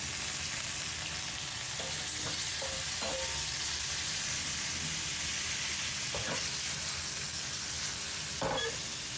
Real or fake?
real